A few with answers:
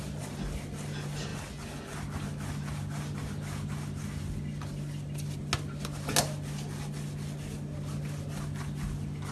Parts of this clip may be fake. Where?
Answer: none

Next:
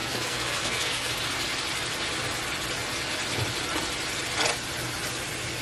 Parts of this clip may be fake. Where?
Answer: 0.0-1.1 (codec, SNAC)

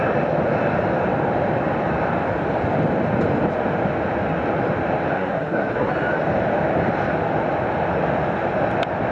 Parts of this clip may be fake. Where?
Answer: 5.1-5.9 (codec, SNAC)

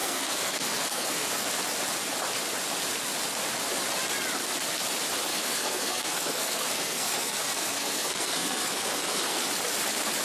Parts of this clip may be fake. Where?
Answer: 0.0-1.5 (codec, SNAC); 5.3-9.5

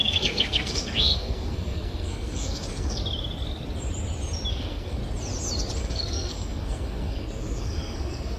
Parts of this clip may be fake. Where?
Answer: 0.0-3.0 (codec, SNAC); 4.5-5.0; 5.8-8.4

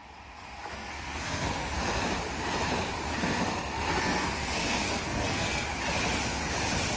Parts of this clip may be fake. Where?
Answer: 0.7-2.0 (codec, SNAC); 3.1-5.8

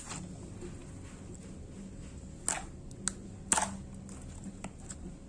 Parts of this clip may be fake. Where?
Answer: none

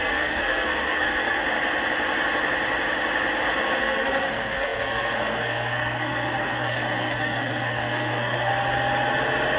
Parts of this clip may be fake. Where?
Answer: 0.0-1.4 (codec, SNAC); 3.8-8.5